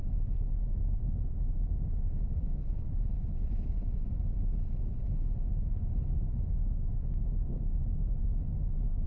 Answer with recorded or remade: recorded